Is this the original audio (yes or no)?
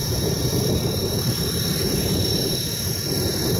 no